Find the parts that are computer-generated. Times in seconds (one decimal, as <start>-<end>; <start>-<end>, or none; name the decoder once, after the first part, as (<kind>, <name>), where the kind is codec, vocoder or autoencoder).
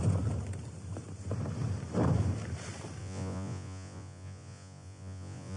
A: 3.0-5.6 (vocoder, Vocos)